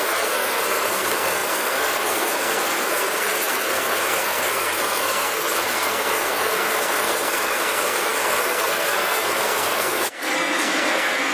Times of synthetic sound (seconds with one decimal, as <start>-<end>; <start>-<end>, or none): 0.0-11.3